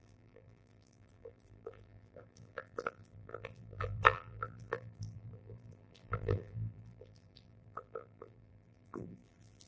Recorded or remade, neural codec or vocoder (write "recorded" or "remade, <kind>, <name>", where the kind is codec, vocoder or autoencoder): remade, vocoder, BigVGAN v2